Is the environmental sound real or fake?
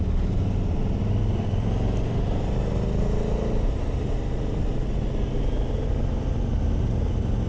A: real